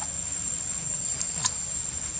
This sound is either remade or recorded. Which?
recorded